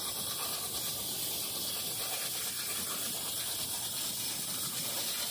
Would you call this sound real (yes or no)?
yes